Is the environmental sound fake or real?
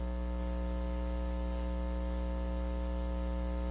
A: real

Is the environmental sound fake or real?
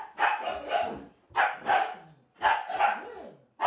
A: real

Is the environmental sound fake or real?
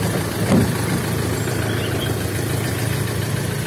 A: fake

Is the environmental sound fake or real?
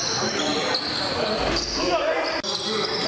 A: real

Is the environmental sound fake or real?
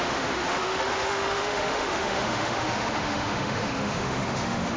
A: fake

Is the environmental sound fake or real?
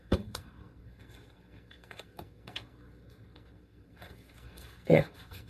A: fake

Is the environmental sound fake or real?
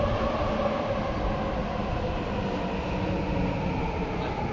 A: real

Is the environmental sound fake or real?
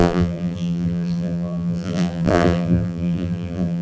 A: fake